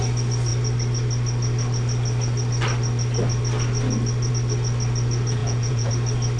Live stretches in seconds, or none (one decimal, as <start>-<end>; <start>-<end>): 0.0-5.4; 5.9-6.4